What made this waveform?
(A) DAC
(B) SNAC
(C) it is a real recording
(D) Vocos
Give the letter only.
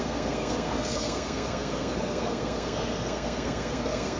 B